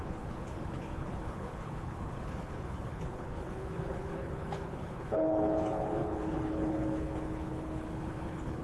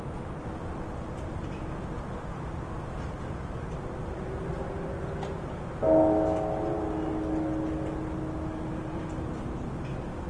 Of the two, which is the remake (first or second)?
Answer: first